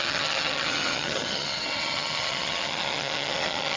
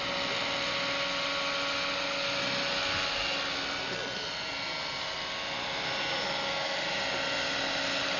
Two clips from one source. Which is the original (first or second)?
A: second